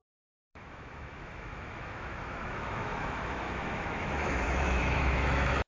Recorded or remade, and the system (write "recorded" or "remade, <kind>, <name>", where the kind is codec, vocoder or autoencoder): remade, autoencoder, DAC-VAE